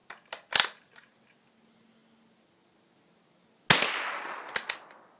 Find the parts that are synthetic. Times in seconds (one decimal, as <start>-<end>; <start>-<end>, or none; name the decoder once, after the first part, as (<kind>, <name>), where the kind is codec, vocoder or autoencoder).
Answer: none